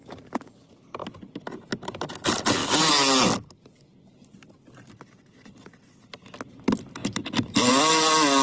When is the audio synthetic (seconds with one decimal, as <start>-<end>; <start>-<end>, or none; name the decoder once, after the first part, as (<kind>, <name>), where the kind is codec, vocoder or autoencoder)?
none